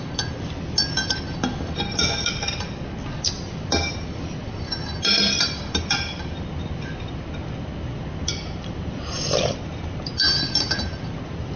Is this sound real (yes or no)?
yes